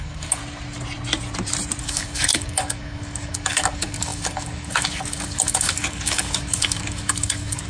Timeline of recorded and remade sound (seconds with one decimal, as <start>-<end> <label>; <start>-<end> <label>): 0.0-0.4 remade; 0.4-1.8 recorded; 1.8-7.7 remade